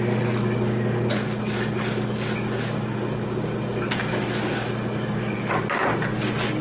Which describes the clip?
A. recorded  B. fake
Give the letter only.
A